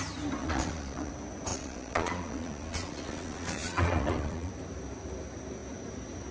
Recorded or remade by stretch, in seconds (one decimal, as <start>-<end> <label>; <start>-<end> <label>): 0.0-0.4 recorded; 0.4-1.1 remade; 1.1-1.5 recorded; 1.5-4.5 remade; 4.5-6.3 recorded